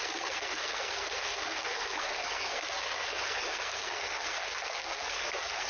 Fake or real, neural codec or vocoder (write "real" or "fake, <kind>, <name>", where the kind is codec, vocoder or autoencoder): fake, codec, SNAC